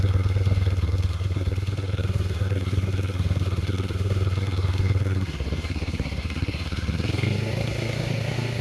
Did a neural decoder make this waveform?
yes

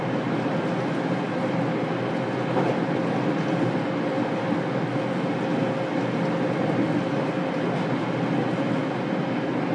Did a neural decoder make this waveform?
no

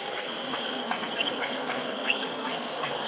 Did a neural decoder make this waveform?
yes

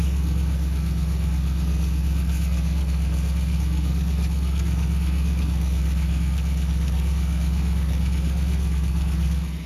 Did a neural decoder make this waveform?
yes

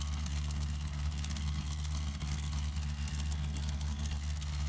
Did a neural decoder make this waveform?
yes